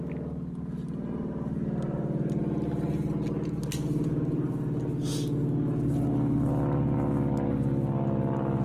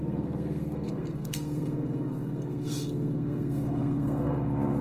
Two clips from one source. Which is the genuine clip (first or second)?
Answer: first